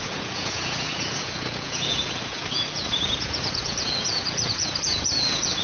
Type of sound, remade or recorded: remade